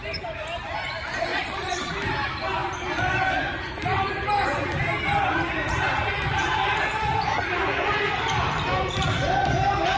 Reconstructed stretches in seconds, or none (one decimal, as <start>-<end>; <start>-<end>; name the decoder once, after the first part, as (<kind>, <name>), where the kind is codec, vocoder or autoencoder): 1.3-1.9 (vocoder, WaveNeXt)